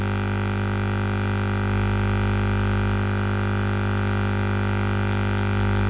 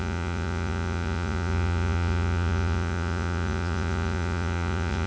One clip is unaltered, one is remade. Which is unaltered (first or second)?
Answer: first